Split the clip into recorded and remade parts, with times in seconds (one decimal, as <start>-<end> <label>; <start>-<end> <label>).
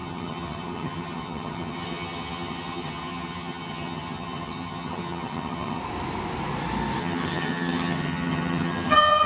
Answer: 0.0-5.8 remade; 5.8-7.0 recorded; 7.0-9.3 remade